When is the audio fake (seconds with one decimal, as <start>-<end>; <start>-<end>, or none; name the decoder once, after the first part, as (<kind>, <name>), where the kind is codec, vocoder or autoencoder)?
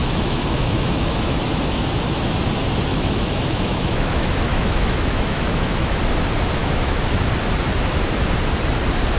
0.0-1.4 (autoencoder, DAC-VAE); 2.9-6.0; 6.6-7.3